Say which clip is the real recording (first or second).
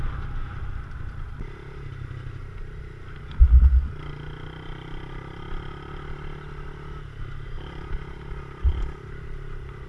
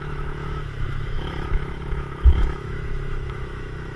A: first